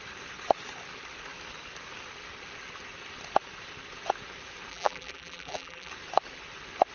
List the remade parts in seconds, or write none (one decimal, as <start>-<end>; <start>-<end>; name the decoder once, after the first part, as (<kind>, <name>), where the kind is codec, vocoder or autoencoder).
4.7-5.9 (vocoder, BigVGAN v2)